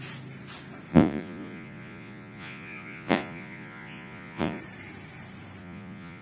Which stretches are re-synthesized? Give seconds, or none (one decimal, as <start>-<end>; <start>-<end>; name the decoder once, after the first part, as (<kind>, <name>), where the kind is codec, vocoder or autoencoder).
0.9-4.6 (vocoder, Vocos); 5.6-6.2